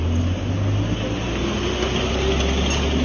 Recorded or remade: recorded